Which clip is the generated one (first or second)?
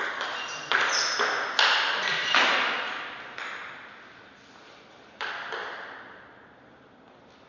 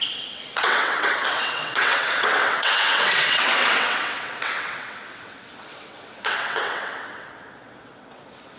second